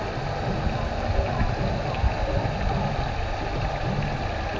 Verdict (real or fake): real